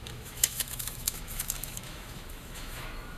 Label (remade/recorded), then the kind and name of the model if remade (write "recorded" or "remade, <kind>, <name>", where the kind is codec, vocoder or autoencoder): remade, autoencoder, DAC-VAE